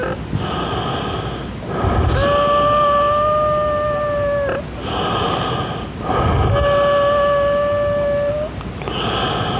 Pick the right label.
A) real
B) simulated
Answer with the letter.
A